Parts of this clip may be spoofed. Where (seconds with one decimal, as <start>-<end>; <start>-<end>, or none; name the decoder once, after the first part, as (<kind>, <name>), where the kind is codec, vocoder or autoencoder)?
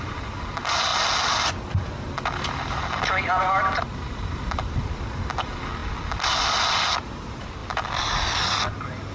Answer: none